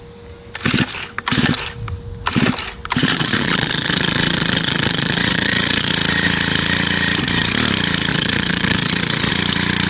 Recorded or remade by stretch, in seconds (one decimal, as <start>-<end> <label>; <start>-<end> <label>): 0.0-3.0 recorded; 3.0-5.9 remade; 5.9-8.1 recorded; 8.1-9.3 remade; 9.3-9.9 recorded